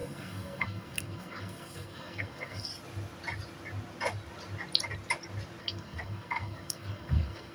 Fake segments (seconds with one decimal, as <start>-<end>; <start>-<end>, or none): 0.0-2.7; 5.6-7.5